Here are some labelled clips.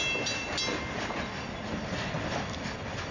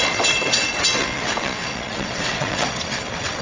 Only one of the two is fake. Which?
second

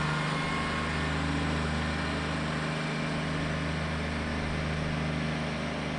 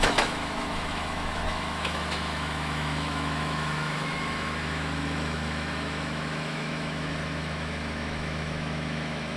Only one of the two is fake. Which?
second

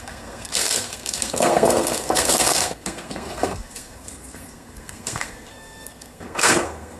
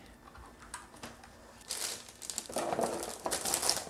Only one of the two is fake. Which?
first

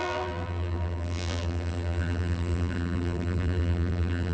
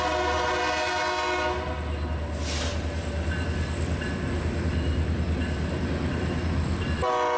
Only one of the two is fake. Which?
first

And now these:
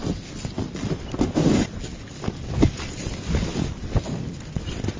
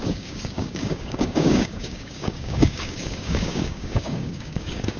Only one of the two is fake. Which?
second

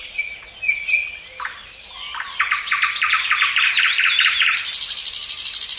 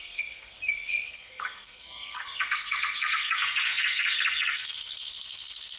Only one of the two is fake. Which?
second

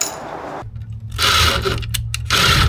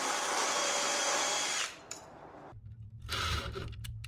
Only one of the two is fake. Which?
second